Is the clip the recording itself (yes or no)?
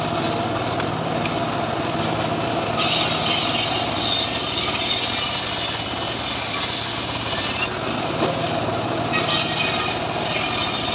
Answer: yes